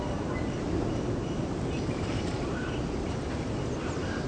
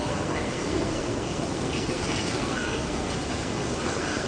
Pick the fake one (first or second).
second